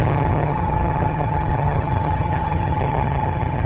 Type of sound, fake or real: fake